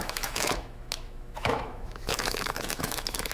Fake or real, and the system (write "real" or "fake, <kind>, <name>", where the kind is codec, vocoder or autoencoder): fake, autoencoder, DAC-VAE